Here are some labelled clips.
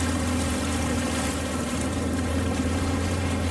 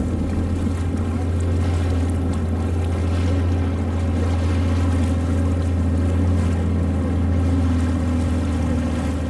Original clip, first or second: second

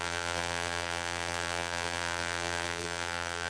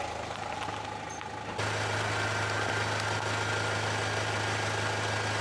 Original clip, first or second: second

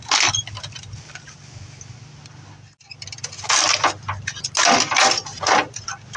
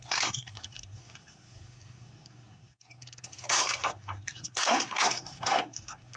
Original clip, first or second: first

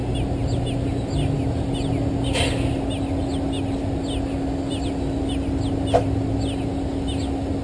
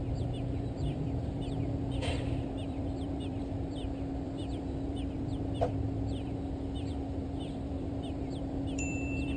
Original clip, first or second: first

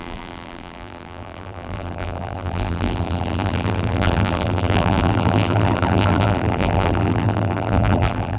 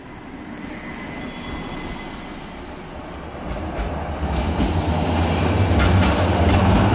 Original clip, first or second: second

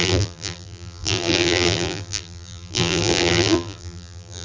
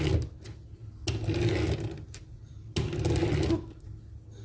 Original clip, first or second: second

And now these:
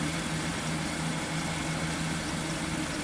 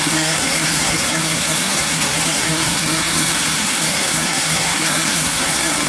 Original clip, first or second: first